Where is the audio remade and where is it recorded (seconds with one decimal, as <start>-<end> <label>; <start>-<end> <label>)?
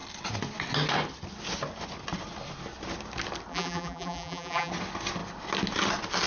0.0-3.5 recorded; 3.5-4.7 remade; 4.7-6.3 recorded